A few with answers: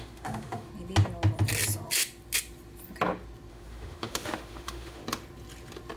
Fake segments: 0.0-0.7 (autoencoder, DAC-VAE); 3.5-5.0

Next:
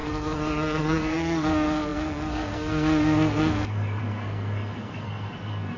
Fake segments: 0.0-5.8 (codec, SNAC)

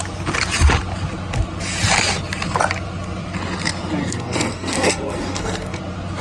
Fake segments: 4.0-5.8 (codec, SNAC)

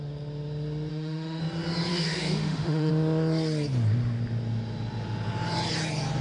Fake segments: 0.9-1.4 (autoencoder, DAC-VAE); 1.9-2.9

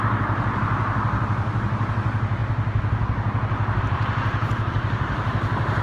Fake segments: 0.0-2.4 (vocoder, BigVGAN v2); 3.8-5.8